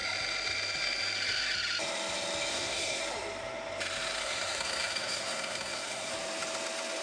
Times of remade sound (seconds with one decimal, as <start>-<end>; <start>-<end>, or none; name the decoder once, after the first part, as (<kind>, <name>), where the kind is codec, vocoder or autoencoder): 2.5-3.0 (codec, SNAC); 4.2-6.1